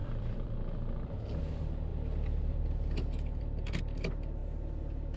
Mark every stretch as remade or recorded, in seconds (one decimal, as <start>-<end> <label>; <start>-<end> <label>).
0.0-1.4 remade; 1.4-1.9 recorded; 1.9-3.8 remade; 3.8-4.4 recorded; 4.4-5.2 remade

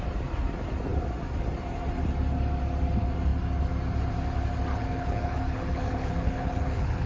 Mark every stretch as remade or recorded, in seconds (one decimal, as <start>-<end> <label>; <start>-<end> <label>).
0.0-4.7 recorded; 4.7-7.1 remade

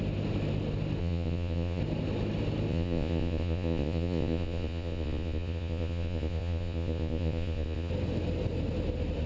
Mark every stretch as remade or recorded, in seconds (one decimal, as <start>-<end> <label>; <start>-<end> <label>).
0.0-1.0 recorded; 1.0-1.8 remade; 1.8-2.7 recorded; 2.7-7.9 remade; 7.9-9.3 recorded

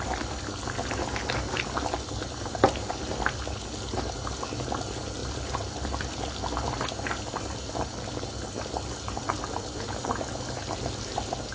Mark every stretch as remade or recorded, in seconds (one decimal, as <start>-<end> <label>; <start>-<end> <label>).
0.0-11.5 recorded

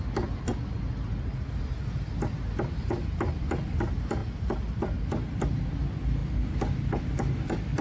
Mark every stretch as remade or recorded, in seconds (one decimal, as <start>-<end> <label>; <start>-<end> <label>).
0.0-7.8 recorded